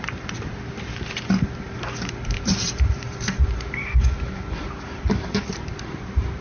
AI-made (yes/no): yes